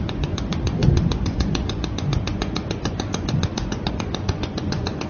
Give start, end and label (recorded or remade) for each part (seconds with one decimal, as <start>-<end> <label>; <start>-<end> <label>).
0.0-5.1 remade